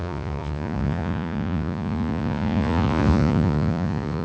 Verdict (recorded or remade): remade